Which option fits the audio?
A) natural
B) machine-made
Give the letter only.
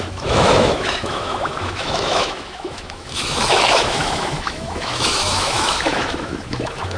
B